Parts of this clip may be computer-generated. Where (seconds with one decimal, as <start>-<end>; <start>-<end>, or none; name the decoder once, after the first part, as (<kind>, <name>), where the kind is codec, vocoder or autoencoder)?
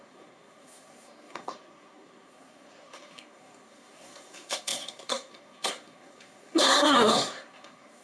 0.0-8.0 (codec, SNAC)